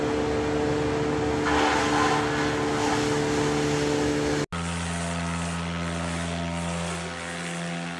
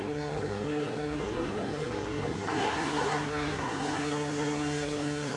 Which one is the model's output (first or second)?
second